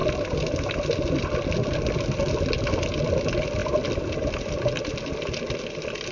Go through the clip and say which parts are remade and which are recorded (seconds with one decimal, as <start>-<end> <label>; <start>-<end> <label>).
0.0-6.1 recorded